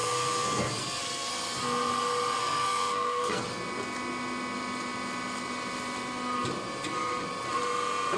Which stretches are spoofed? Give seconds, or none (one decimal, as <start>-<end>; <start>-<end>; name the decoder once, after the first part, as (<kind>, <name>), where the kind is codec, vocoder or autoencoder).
0.0-1.3 (codec, SNAC); 2.4-3.4